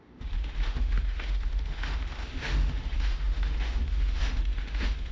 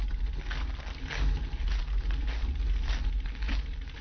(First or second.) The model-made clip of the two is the first